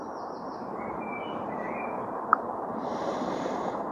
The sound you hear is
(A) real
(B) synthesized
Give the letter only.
B